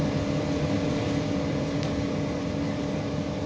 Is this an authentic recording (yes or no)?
yes